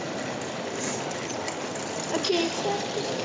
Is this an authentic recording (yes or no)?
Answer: yes